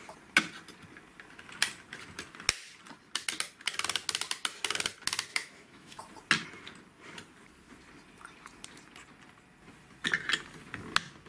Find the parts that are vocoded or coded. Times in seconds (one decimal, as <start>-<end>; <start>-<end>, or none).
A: 5.3-6.0